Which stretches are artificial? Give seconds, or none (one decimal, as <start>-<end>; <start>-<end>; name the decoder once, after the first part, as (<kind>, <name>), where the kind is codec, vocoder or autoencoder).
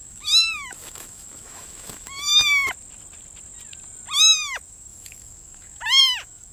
0.0-2.3 (autoencoder, DAC-VAE); 4.2-6.5